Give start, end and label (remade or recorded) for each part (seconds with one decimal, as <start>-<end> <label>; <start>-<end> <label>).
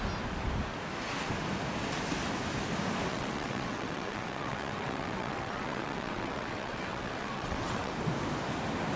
0.0-3.1 recorded; 3.1-7.9 remade; 7.9-9.0 recorded